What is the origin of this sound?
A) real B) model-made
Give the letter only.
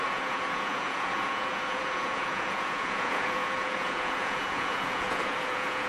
B